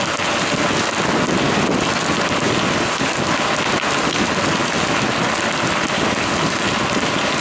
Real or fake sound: real